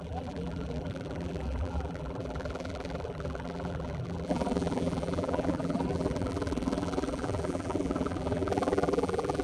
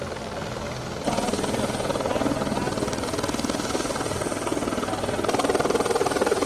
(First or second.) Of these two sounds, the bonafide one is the second